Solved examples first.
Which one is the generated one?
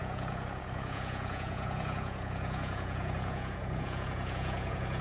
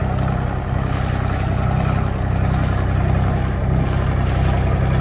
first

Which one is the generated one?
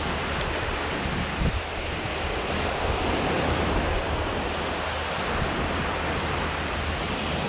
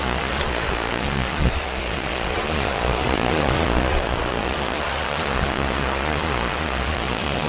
second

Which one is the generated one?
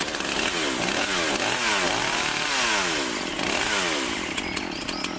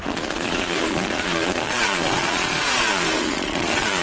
second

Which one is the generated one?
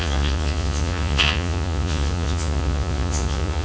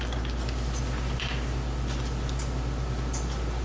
first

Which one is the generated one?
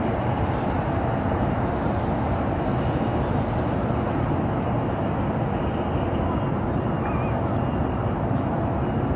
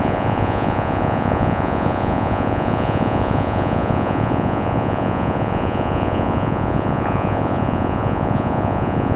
second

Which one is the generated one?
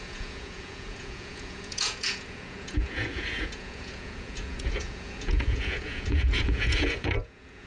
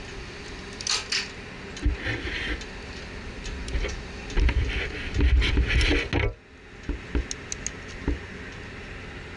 first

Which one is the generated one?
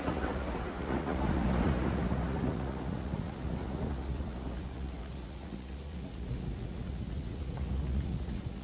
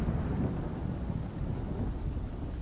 first